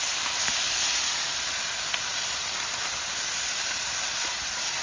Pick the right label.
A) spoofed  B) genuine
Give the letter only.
B